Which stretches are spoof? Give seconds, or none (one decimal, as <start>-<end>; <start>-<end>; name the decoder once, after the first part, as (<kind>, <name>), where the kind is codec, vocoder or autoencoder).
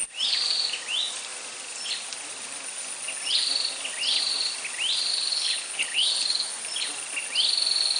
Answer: 5.1-6.5 (codec, HILCodec)